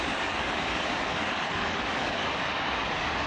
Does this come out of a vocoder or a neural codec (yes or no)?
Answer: yes